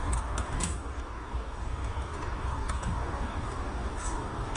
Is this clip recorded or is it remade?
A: remade